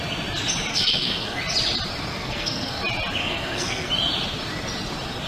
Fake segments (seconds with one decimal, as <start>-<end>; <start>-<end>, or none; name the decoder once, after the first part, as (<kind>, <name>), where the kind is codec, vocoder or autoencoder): 0.7-1.4 (codec, SNAC); 2.1-2.8; 3.2-3.9